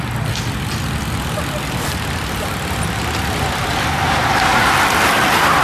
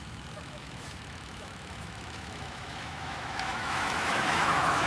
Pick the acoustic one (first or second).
first